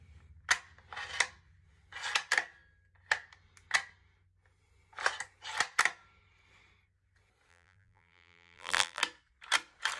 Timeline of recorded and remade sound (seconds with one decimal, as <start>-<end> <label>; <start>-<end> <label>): 0.0-7.5 recorded; 7.5-9.0 remade; 9.0-10.0 recorded

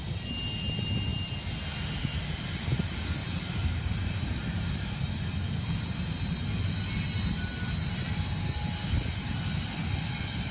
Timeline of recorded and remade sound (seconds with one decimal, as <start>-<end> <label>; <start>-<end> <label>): 0.0-3.2 recorded; 3.2-3.9 remade; 3.9-10.5 recorded

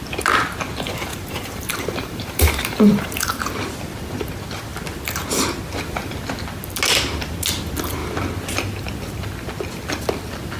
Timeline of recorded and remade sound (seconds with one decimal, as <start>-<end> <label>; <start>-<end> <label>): 0.0-1.1 recorded; 1.1-3.4 remade; 3.4-10.6 recorded

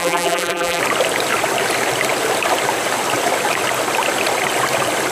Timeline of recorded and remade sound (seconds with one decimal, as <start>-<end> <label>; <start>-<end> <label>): 0.0-0.8 remade; 0.8-5.1 recorded

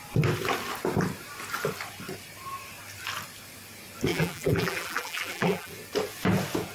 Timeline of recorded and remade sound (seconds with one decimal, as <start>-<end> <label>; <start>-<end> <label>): 0.0-4.1 recorded; 4.1-5.7 remade; 5.7-6.7 recorded